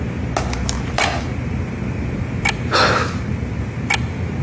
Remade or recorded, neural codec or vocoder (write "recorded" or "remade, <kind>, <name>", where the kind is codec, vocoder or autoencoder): recorded